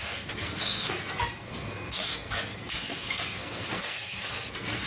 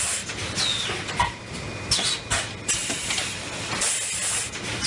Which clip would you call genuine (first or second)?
second